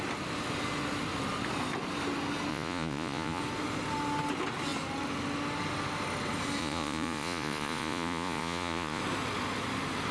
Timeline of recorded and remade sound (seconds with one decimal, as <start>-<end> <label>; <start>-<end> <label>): 0.0-2.5 recorded; 2.5-3.4 remade; 3.4-6.6 recorded; 6.6-9.0 remade; 9.0-10.1 recorded